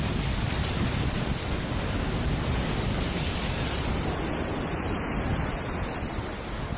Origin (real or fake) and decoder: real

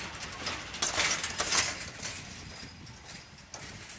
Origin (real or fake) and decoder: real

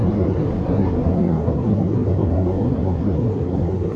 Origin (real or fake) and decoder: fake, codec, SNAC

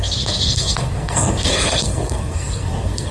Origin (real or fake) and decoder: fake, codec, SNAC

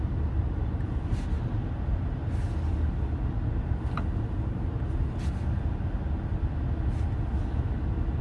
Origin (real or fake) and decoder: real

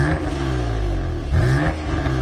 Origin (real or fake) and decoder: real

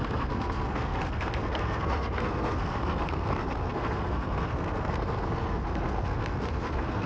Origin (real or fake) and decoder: fake, codec, SNAC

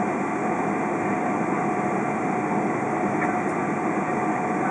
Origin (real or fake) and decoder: real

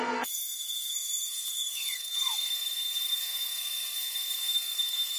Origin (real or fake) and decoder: fake, codec, SNAC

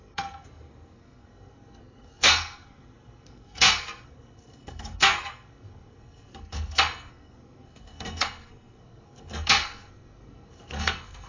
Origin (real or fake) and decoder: fake, codec, SNAC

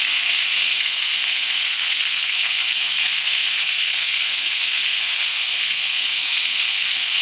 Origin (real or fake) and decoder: fake, codec, SNAC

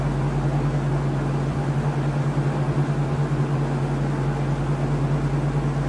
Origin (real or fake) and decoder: real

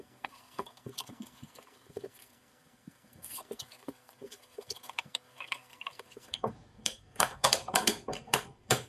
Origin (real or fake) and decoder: fake, codec, SNAC